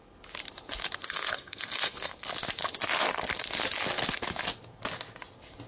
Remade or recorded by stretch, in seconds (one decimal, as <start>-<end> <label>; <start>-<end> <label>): 0.0-1.0 recorded; 1.0-2.1 remade; 2.1-5.7 recorded